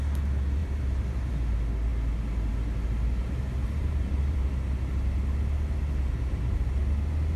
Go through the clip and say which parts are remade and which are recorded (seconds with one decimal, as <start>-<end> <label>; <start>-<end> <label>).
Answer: 0.0-0.6 recorded; 0.6-1.3 remade; 1.3-3.2 recorded; 3.2-4.5 remade; 4.5-7.4 recorded